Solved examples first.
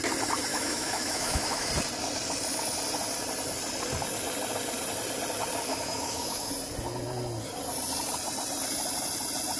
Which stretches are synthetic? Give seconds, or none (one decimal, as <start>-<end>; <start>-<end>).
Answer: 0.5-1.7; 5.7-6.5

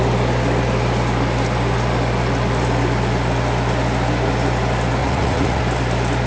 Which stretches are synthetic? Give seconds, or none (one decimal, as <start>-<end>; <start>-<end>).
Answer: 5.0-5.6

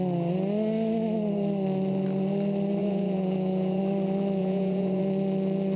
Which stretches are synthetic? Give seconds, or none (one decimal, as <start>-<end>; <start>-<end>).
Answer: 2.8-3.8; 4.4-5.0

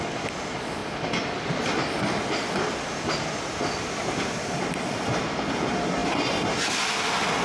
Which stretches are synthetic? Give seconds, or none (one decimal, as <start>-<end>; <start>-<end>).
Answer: none

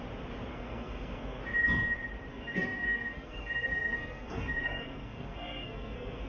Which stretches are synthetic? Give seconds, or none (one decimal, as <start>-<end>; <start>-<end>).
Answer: 0.5-1.4; 2.3-6.3

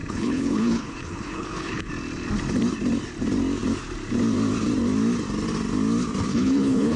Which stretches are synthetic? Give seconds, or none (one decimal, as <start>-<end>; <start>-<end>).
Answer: 0.0-1.9; 6.3-7.0

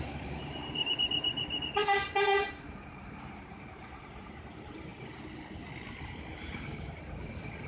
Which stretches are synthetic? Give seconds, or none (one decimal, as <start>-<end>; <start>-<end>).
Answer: 0.0-4.9; 5.9-7.7

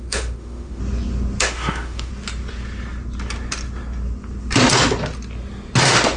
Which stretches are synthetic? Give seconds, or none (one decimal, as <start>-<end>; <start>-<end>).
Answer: 0.0-0.8; 1.4-2.1; 5.8-6.2